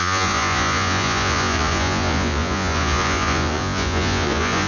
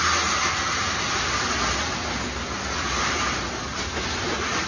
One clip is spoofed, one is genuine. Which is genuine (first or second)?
second